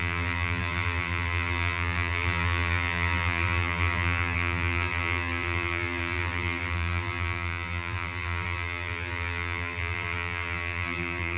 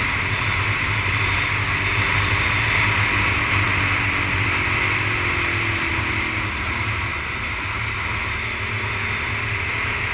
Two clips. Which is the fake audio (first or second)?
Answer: first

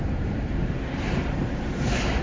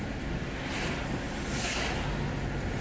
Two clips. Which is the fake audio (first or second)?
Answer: first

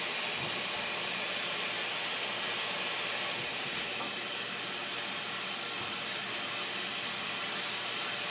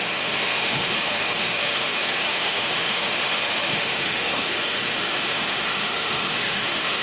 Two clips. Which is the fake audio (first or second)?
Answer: second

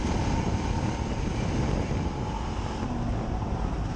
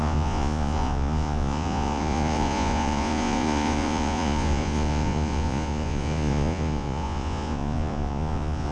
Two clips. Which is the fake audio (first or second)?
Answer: second